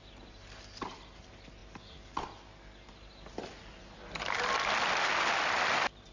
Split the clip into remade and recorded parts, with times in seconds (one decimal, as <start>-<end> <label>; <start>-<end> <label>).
0.0-6.1 recorded